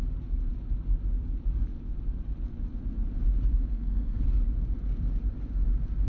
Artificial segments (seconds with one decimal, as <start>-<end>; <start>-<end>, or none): 3.5-4.2